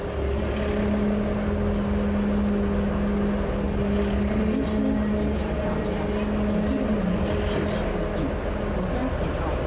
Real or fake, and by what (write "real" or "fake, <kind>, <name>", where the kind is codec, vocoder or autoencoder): real